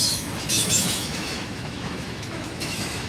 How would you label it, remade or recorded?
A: remade